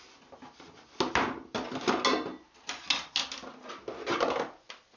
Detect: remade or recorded recorded